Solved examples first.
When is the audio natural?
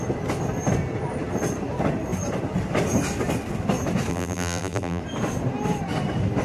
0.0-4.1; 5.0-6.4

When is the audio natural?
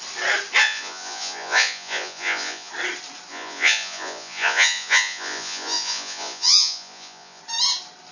0.0-0.6; 2.7-3.3; 7.4-8.1